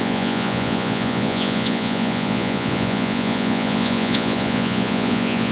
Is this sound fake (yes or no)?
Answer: yes